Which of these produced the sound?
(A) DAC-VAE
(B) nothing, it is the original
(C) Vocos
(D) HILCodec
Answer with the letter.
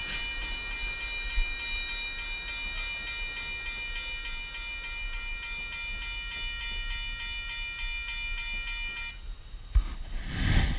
B